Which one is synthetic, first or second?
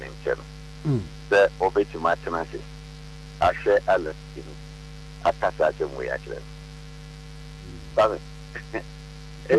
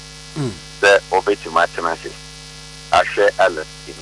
first